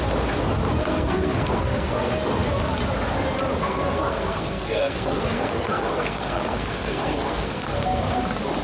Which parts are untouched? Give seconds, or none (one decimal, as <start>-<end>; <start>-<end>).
0.0-0.8; 2.1-3.6; 8.2-8.6